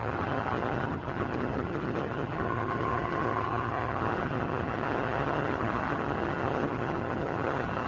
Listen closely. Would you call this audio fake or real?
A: fake